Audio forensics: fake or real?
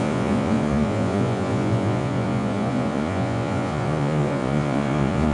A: fake